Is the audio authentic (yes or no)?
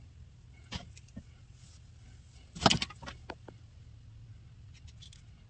yes